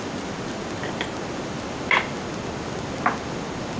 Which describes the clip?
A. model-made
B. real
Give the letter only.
B